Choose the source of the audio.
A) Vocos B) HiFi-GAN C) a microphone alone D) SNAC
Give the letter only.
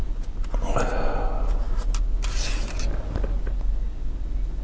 C